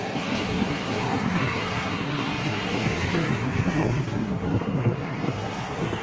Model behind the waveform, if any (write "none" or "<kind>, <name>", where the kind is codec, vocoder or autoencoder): codec, SNAC